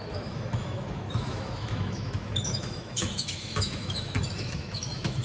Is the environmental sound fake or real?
fake